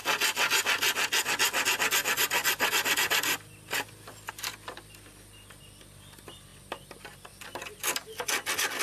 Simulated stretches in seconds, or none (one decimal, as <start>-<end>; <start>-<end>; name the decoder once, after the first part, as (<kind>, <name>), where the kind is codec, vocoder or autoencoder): none